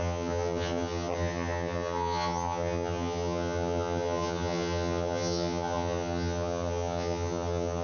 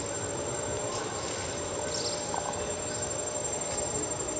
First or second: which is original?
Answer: second